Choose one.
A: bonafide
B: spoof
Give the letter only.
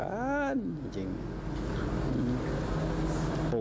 A